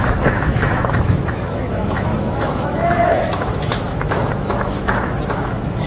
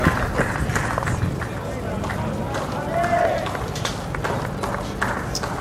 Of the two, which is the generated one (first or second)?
first